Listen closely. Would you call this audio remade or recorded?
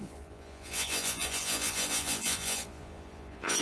remade